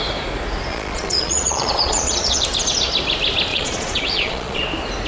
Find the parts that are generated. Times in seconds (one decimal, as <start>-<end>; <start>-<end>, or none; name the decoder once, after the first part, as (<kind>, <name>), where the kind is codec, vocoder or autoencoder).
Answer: 0.7-2.4 (vocoder, Vocos); 3.5-4.6